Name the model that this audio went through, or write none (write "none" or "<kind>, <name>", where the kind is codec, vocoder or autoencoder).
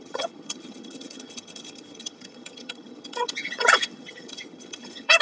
vocoder, HiFi-GAN